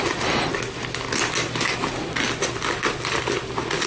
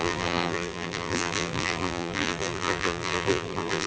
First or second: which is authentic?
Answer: first